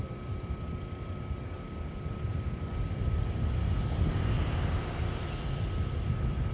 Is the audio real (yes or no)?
yes